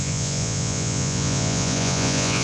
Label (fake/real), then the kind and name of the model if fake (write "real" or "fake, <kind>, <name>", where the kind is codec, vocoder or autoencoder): fake, vocoder, Vocos